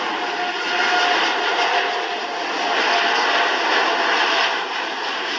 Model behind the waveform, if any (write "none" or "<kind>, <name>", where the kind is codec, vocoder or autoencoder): none